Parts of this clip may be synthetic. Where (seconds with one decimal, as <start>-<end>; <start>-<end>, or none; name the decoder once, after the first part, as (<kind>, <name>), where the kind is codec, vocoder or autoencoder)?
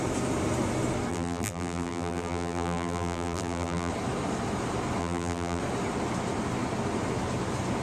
1.1-3.9 (vocoder, BigVGAN v2); 5.0-5.6